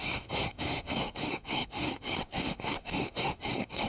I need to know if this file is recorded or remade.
remade